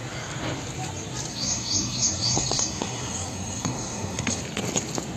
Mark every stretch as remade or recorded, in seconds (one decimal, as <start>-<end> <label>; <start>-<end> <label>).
0.0-1.3 recorded; 1.3-4.4 remade; 4.4-5.2 recorded

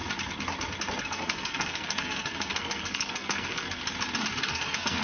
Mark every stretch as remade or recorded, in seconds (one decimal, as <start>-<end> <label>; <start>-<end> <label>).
0.0-1.0 recorded; 1.0-3.8 remade; 3.8-4.4 recorded; 4.4-5.0 remade

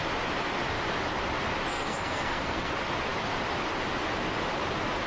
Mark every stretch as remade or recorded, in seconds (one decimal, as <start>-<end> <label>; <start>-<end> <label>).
0.0-1.7 recorded; 1.7-2.7 remade; 2.7-5.1 recorded

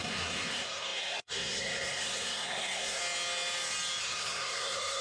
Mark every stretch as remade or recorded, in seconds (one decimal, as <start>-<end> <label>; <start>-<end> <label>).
0.0-3.0 remade; 3.0-4.0 recorded; 4.0-5.0 remade

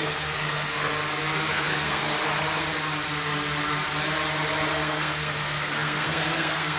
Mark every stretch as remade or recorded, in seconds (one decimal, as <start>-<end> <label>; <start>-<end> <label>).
0.0-0.9 remade; 0.9-1.5 recorded; 1.5-2.1 remade; 2.1-4.7 recorded; 4.7-6.8 remade